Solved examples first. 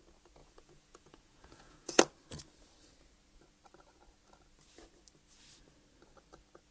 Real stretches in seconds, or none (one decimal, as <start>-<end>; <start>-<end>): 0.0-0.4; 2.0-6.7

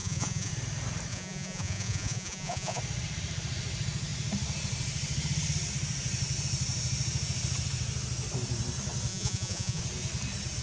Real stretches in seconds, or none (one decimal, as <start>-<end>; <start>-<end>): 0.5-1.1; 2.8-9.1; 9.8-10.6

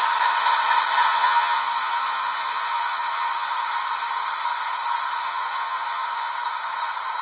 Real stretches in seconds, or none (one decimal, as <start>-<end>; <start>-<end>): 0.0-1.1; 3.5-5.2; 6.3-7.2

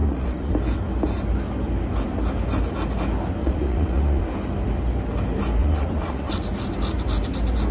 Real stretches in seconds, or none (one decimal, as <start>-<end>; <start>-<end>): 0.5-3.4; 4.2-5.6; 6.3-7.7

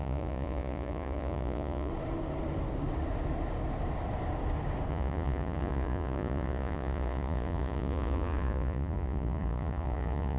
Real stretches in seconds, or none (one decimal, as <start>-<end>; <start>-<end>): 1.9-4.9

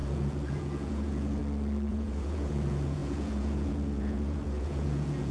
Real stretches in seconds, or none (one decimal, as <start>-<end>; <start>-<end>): 1.4-1.9